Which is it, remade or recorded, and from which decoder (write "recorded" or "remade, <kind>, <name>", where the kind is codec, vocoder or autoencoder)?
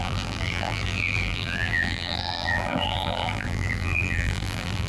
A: remade, vocoder, BigVGAN v2